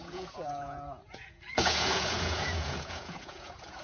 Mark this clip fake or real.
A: fake